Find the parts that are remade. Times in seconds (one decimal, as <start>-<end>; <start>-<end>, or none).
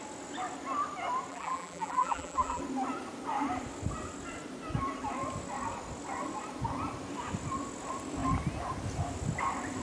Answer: 1.3-2.6